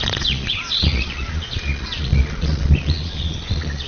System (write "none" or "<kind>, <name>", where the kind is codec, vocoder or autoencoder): vocoder, Vocos